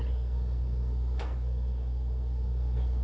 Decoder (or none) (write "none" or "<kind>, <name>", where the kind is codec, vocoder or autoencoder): codec, SNAC